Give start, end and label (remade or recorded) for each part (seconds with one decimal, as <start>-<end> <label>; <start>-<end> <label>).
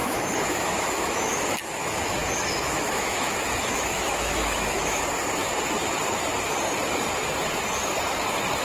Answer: 0.0-5.0 remade; 5.0-8.6 recorded